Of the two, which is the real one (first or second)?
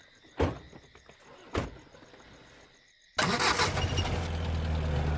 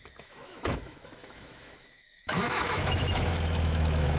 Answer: first